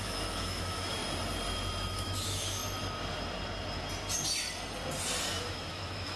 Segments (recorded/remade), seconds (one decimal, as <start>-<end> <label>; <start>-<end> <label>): 0.0-1.0 remade; 1.0-1.9 recorded; 1.9-2.6 remade; 2.6-5.4 recorded; 5.4-6.2 remade